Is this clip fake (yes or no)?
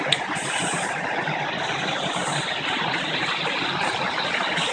no